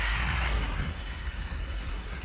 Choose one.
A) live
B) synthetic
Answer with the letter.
B